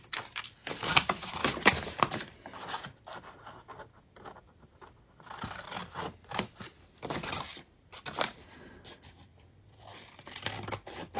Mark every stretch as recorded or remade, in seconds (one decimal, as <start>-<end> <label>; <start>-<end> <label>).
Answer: 0.0-5.8 remade; 5.8-6.5 recorded; 6.5-11.2 remade